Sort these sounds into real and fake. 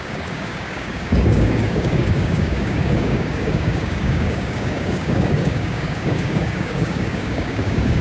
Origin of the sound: fake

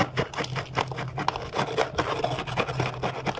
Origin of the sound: real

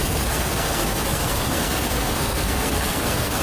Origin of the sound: fake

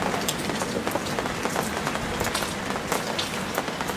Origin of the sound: real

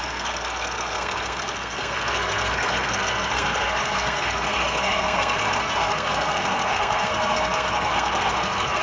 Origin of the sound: fake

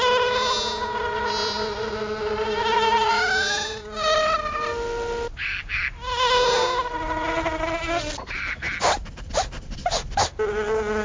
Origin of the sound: real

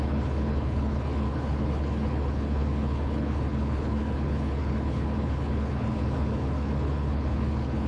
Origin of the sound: fake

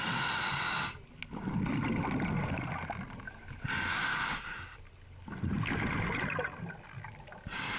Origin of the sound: real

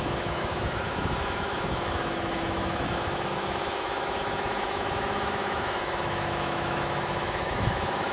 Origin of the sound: fake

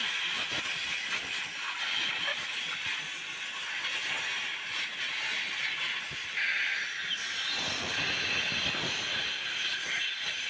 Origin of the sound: real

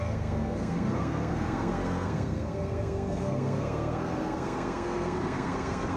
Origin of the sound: fake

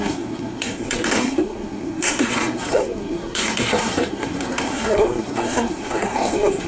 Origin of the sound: fake